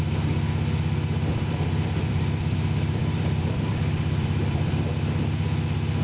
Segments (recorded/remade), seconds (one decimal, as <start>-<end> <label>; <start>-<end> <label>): 0.0-1.3 recorded; 1.3-4.9 remade; 4.9-6.0 recorded